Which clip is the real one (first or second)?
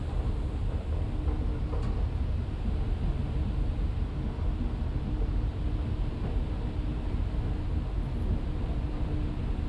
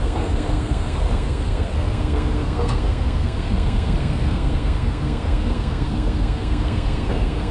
first